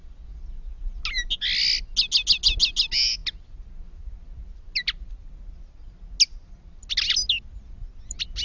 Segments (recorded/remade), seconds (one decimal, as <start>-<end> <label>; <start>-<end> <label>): 0.0-8.4 recorded